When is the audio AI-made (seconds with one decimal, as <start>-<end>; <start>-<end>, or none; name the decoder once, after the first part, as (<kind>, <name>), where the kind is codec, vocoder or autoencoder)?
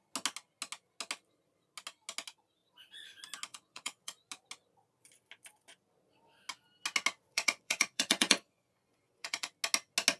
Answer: 3.5-4.3 (vocoder, Vocos); 7.3-9.5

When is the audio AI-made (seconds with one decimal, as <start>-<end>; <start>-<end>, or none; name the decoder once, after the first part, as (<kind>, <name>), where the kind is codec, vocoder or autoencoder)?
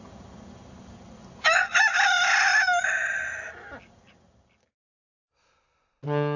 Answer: none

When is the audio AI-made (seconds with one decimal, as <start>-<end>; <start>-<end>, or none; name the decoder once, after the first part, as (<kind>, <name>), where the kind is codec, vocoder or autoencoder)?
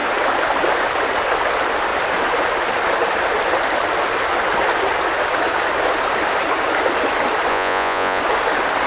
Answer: 7.5-8.2 (vocoder, Vocos)